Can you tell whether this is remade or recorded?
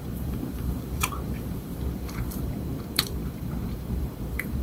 remade